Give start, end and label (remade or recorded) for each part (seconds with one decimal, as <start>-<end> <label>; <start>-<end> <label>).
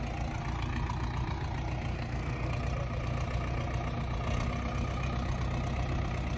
0.0-1.9 recorded; 1.9-2.5 remade; 2.5-6.4 recorded